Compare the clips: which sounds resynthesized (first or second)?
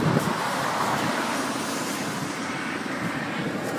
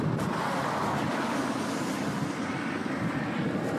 first